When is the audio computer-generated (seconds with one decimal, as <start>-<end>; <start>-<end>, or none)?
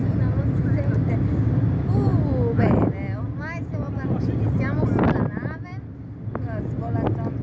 none